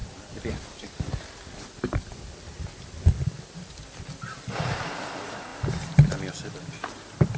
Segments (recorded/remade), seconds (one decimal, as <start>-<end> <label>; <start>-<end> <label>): 0.0-2.3 remade; 2.3-5.5 recorded; 5.5-7.4 remade